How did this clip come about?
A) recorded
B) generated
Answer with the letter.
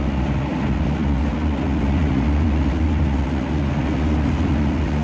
B